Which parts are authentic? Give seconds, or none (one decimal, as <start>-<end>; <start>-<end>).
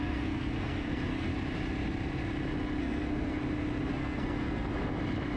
1.3-2.8; 3.4-3.9; 4.7-5.4